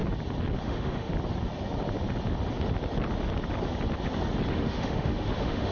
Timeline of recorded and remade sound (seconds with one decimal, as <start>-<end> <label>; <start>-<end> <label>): 0.0-0.6 recorded; 0.6-1.1 remade; 1.1-4.5 recorded; 4.5-5.7 remade